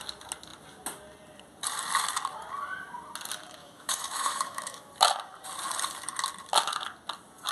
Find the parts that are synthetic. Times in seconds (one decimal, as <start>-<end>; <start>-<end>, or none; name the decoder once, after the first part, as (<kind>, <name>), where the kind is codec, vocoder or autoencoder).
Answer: 3.6-4.9 (autoencoder, DAC-VAE)